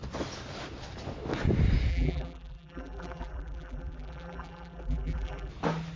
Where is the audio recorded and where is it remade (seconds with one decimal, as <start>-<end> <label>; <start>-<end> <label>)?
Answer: 0.0-1.9 recorded; 1.9-5.5 remade; 5.5-6.0 recorded